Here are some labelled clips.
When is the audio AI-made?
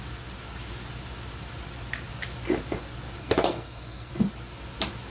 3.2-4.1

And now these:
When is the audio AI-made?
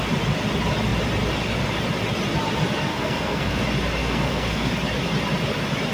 2.9-3.6; 4.0-4.7